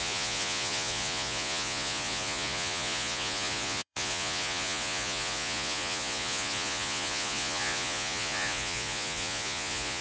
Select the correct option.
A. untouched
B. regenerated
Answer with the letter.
B